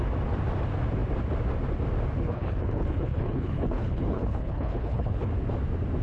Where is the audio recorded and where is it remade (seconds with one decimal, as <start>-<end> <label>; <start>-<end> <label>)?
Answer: 0.0-2.2 recorded; 2.2-5.3 remade; 5.3-6.0 recorded